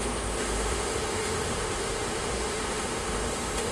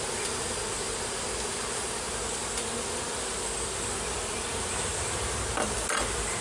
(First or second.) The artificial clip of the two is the first